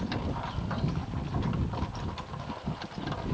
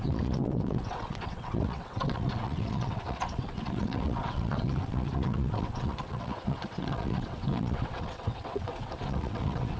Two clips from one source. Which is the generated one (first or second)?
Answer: second